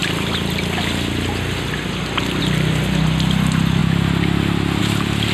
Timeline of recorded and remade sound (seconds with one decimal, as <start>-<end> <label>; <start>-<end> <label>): 0.0-5.3 recorded